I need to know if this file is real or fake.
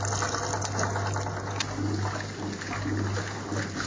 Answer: real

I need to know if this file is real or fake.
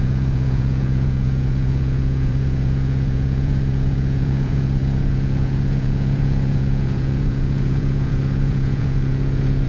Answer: fake